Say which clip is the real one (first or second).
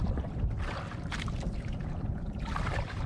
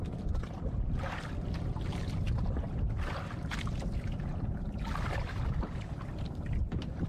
second